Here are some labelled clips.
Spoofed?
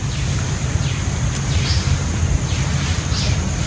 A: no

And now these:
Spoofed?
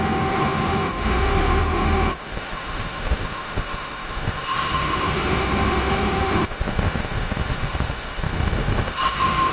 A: yes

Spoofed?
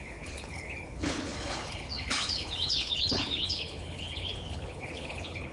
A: yes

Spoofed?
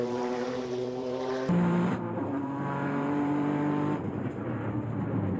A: yes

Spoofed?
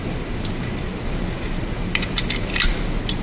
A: no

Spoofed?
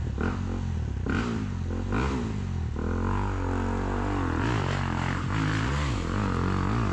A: no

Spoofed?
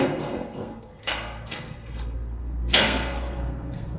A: yes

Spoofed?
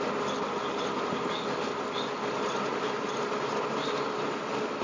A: no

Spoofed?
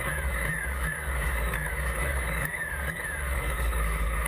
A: yes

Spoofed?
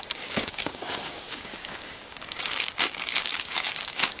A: yes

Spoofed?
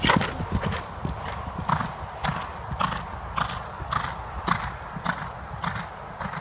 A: no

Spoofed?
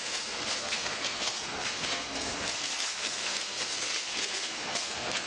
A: yes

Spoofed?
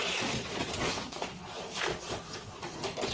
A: yes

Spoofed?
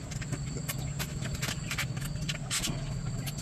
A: no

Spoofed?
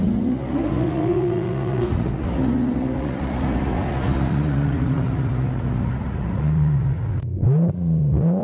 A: yes